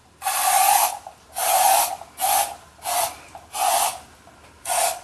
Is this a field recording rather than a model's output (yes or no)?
yes